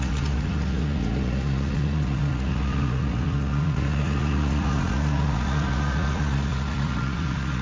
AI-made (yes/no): yes